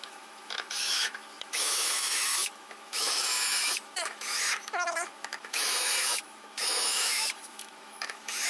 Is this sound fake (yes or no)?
yes